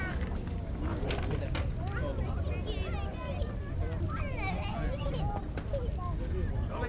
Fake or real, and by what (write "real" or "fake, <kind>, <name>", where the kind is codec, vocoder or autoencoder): real